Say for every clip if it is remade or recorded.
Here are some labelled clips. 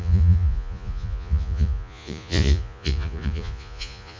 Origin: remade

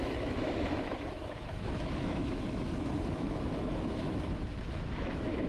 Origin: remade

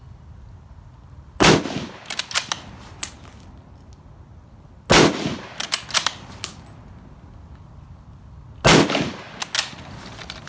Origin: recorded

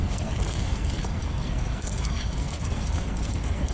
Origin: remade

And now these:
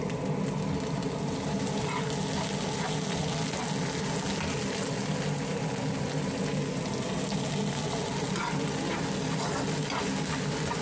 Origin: recorded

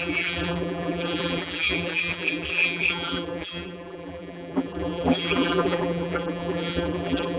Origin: remade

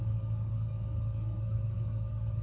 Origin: remade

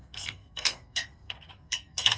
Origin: remade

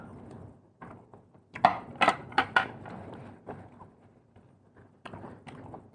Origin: recorded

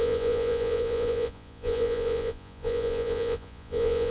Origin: remade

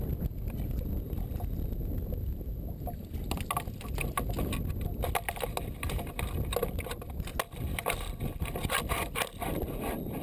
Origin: recorded